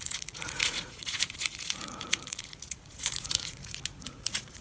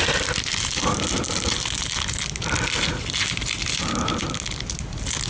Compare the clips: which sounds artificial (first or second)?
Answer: first